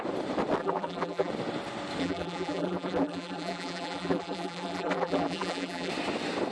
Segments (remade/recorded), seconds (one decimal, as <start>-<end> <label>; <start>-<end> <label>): 0.0-0.6 recorded; 0.6-1.3 remade; 1.3-2.0 recorded; 2.0-5.9 remade; 5.9-6.5 recorded